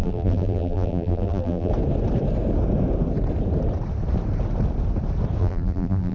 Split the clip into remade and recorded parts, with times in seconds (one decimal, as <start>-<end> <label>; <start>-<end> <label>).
0.0-1.7 remade; 1.7-5.4 recorded; 5.4-6.1 remade